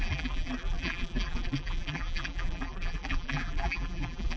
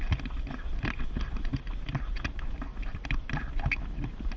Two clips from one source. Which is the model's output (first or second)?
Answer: first